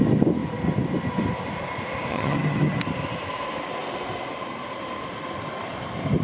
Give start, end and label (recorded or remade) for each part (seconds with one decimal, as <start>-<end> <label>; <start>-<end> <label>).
0.0-2.1 recorded; 2.1-2.8 remade; 2.8-6.2 recorded